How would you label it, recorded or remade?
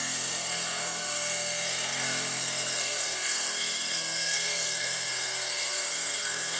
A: remade